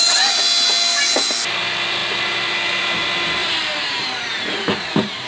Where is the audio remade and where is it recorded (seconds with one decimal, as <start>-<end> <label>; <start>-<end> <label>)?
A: 0.0-3.4 recorded; 3.4-5.3 remade